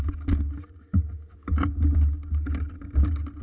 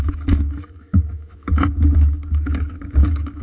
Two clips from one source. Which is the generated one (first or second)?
second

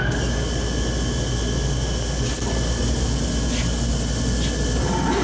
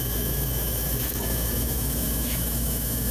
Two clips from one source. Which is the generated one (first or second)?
second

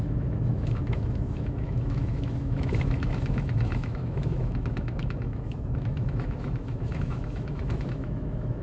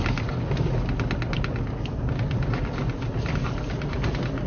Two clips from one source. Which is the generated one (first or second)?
first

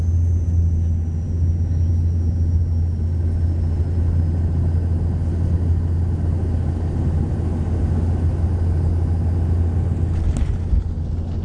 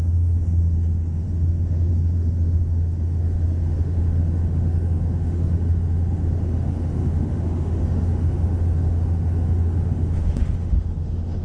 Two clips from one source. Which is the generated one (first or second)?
second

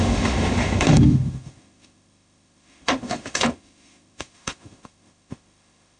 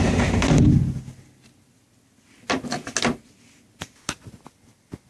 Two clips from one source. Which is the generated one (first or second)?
first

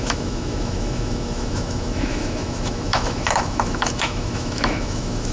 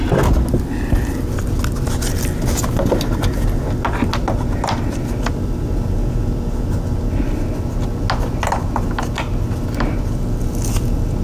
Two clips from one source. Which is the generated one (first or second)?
first